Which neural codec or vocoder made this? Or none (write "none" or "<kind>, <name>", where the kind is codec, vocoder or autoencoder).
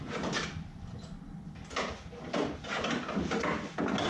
none